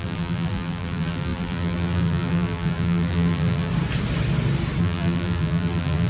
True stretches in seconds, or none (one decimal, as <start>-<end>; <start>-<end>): 3.7-4.8

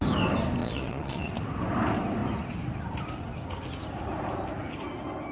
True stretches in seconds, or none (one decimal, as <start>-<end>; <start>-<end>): 0.0-0.6; 1.3-5.3

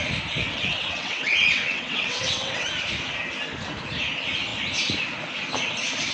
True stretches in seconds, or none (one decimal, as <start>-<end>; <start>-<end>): 0.0-0.4; 2.7-6.1

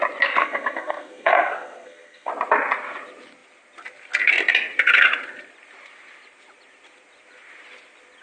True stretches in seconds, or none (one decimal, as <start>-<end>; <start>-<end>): 0.0-0.4; 2.3-8.2